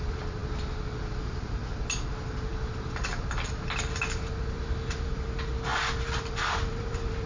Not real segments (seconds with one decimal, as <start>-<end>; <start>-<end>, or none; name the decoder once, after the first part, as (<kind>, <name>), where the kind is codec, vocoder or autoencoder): 0.0-0.4 (vocoder, BigVGAN v2); 1.1-1.6; 2.1-2.5; 4.4-7.3